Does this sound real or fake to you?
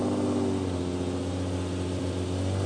real